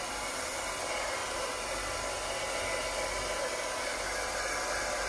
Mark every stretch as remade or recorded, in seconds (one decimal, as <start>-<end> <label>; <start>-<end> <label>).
0.0-5.1 recorded

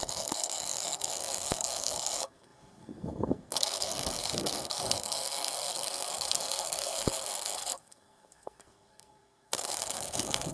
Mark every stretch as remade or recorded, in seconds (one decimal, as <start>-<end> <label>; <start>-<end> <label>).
0.0-10.5 remade

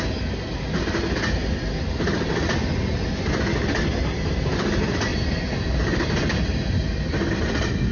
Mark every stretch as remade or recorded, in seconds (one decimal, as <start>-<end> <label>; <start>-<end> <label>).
0.0-7.9 recorded

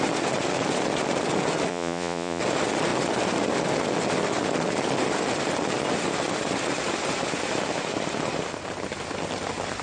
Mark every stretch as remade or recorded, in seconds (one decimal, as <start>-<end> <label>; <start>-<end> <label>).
0.0-1.7 recorded; 1.7-2.4 remade; 2.4-9.8 recorded

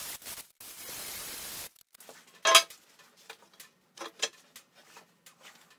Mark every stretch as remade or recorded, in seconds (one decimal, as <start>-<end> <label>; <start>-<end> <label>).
0.0-0.7 recorded; 0.7-1.5 remade; 1.5-5.8 recorded

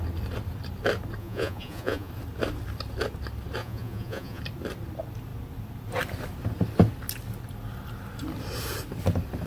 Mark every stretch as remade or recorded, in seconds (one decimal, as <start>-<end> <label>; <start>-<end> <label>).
0.0-1.2 recorded; 1.2-2.1 remade; 2.1-3.6 recorded; 3.6-4.4 remade; 4.4-9.5 recorded